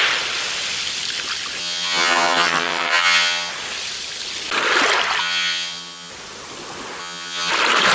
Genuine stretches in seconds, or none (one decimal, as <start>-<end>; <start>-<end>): 0.0-1.6; 3.5-5.2; 6.1-7.0; 7.5-7.9